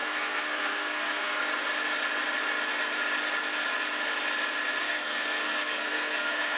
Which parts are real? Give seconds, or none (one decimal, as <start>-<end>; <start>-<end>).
1.4-4.8